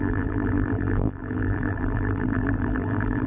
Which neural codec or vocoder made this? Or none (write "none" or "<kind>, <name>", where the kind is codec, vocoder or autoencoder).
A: vocoder, BigVGAN v2